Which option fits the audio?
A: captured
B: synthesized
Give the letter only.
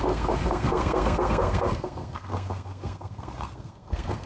B